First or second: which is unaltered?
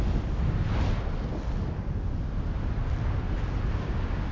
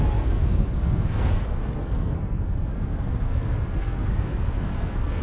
first